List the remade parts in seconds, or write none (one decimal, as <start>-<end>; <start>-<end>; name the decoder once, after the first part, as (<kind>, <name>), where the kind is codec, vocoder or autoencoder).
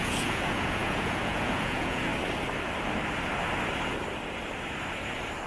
0.0-2.1 (vocoder, Vocos)